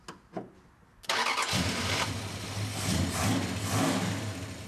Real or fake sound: real